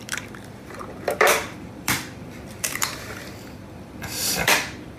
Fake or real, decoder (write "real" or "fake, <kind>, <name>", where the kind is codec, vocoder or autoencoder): fake, vocoder, BigVGAN v2